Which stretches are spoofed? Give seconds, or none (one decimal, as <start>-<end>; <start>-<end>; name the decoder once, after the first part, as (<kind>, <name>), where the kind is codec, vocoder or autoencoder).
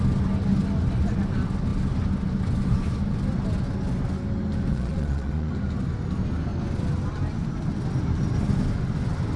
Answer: 4.7-5.5 (vocoder, Vocos)